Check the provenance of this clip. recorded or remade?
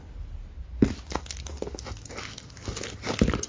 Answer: recorded